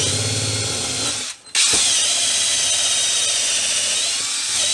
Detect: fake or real real